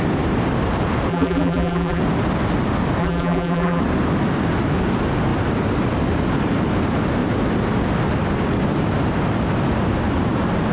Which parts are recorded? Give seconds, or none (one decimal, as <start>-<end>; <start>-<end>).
0.0-1.1; 2.0-3.0; 3.8-10.7